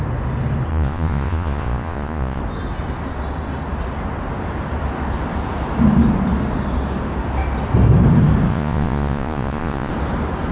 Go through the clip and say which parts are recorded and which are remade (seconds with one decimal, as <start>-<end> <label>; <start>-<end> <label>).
0.0-0.7 recorded; 0.7-2.4 remade; 2.4-8.5 recorded; 8.5-9.9 remade; 9.9-10.5 recorded